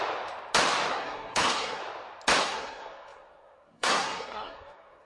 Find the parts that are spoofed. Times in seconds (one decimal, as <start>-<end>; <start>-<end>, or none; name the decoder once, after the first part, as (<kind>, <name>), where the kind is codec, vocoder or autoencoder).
0.9-1.8 (codec, SNAC); 2.4-5.1